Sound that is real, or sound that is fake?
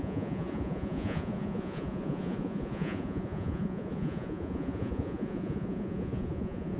fake